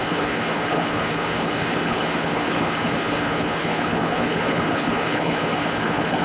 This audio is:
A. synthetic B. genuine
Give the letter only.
A